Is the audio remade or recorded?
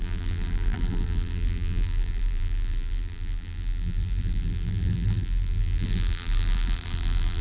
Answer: remade